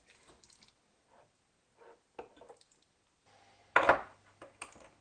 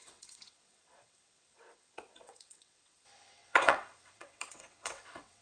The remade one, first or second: second